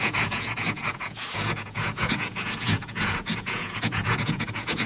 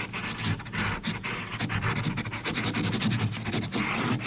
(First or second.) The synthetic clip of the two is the first